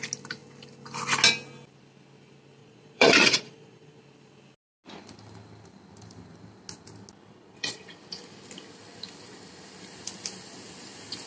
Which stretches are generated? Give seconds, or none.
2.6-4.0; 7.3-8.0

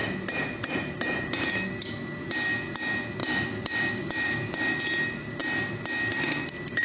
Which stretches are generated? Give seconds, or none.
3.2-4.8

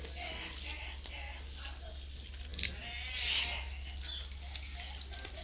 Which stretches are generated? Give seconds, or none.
none

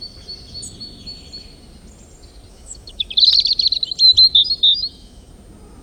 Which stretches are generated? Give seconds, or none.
2.5-3.1; 4.7-5.3